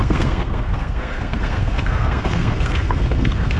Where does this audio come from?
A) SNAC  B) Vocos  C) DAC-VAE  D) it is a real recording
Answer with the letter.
A